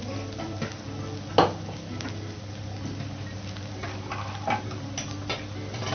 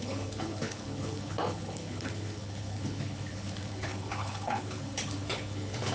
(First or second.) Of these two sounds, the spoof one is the second